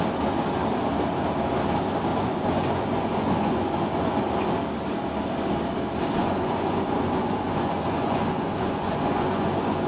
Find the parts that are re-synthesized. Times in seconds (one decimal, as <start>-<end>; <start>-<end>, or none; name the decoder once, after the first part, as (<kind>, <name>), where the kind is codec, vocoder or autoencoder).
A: 2.1-4.2 (vocoder, Vocos); 6.2-9.9